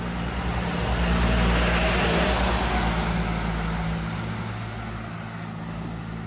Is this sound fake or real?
real